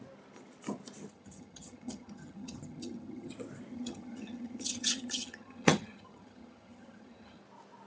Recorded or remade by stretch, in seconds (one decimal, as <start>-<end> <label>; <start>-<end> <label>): 0.0-1.1 recorded; 1.1-3.3 remade; 3.3-3.7 recorded; 3.7-7.4 remade; 7.4-7.9 recorded